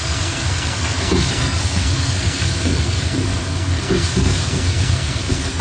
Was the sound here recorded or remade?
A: remade